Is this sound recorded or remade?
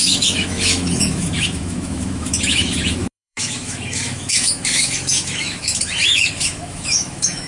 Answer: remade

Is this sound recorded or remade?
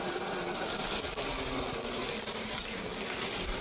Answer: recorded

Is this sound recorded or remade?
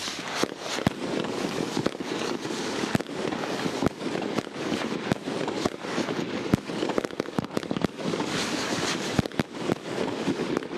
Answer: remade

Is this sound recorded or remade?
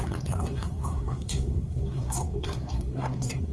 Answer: remade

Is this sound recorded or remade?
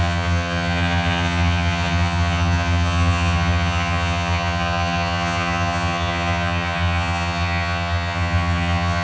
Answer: remade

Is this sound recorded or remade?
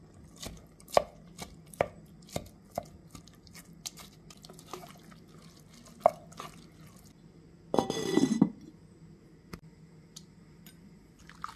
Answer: recorded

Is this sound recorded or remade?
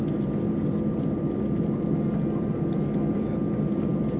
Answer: recorded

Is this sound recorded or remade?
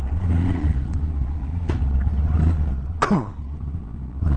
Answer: remade